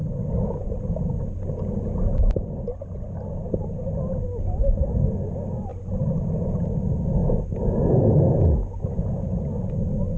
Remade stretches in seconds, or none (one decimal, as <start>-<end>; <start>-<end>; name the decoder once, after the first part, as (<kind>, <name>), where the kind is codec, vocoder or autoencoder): 5.7-6.5 (vocoder, BigVGAN v2); 7.2-8.1